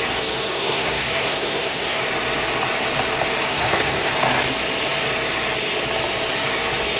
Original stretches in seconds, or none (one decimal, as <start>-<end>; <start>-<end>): 0.0-0.5; 2.0-3.5; 4.1-7.0